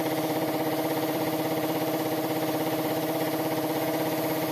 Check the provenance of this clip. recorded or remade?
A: remade